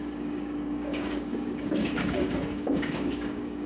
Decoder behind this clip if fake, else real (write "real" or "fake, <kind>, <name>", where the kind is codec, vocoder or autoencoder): fake, codec, DAC